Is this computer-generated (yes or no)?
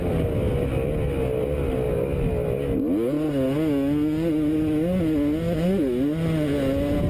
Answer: no